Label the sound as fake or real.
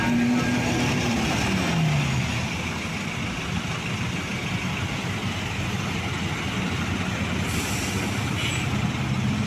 real